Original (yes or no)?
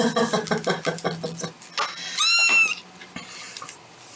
yes